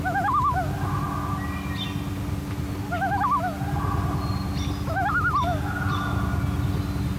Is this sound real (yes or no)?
yes